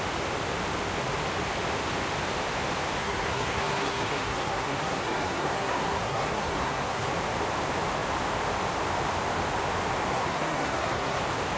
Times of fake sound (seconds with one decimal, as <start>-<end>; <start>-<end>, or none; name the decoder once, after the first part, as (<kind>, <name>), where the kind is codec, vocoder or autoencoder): 3.0-7.1 (codec, SNAC); 10.1-11.2